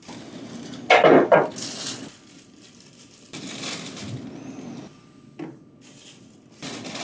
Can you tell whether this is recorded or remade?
recorded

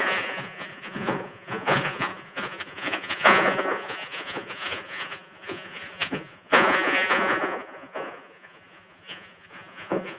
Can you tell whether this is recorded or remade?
remade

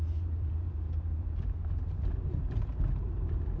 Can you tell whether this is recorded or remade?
remade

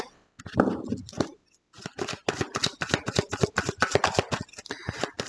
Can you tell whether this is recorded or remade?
recorded